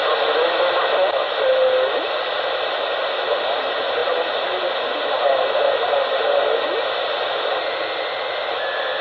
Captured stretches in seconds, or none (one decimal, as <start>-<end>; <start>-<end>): 0.0-9.0